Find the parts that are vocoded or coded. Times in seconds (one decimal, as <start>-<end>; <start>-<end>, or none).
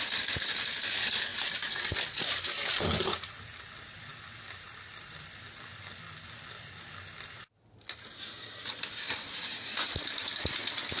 none